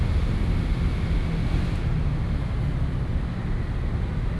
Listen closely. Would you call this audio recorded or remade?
recorded